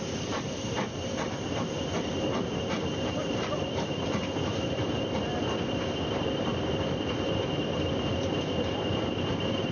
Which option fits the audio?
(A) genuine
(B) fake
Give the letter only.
B